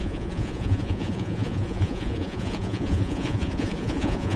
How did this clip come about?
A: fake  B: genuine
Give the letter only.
A